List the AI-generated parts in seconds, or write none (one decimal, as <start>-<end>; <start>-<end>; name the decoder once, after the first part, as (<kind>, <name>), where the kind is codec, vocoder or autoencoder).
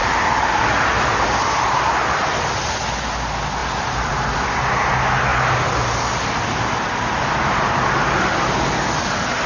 none